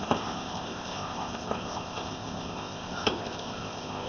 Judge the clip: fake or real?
fake